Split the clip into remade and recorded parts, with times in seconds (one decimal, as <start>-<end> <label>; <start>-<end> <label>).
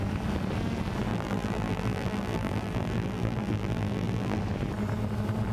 0.0-1.1 recorded; 1.1-4.4 remade; 4.4-5.5 recorded